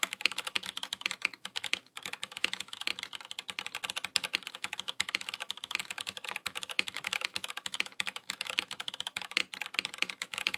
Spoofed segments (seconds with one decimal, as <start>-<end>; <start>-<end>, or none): 0.0-2.9; 4.5-9.4; 10.0-10.6